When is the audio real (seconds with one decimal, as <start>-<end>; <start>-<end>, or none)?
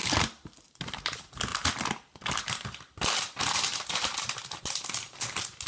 0.0-5.7